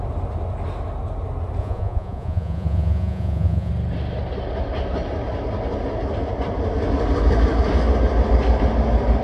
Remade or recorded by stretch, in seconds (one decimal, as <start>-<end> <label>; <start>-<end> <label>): 0.0-1.6 recorded; 1.6-3.7 remade; 3.7-9.2 recorded